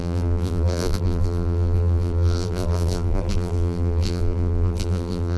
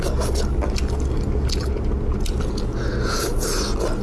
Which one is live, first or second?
second